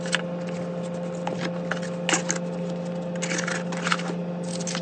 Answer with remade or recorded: recorded